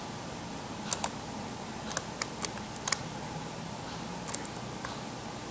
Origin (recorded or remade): recorded